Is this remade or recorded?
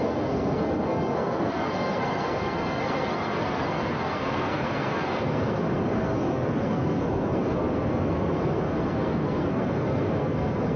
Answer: remade